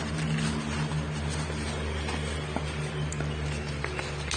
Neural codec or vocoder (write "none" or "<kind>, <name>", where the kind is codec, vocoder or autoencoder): none